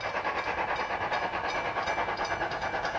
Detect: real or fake real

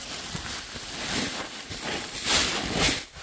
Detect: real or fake real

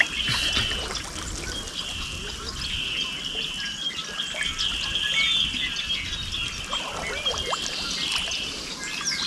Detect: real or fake real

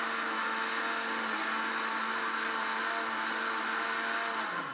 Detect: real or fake real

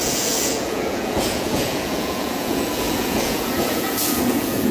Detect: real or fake fake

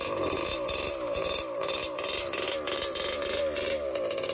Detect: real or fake real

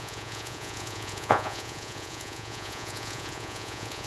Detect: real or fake fake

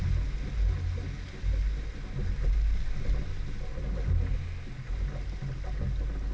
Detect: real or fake real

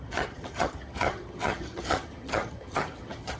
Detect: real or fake fake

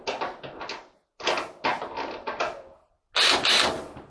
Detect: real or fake real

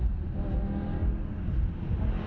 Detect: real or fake real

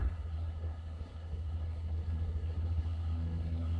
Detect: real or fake fake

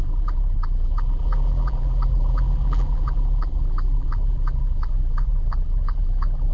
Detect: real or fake fake